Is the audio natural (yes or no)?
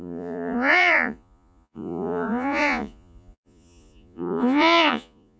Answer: no